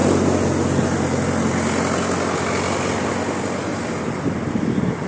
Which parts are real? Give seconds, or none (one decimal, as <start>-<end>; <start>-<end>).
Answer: 0.0-3.7